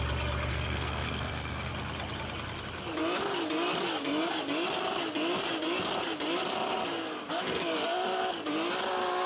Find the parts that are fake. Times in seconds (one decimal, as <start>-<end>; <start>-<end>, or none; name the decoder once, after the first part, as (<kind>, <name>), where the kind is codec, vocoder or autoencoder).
0.5-1.7 (codec, SNAC)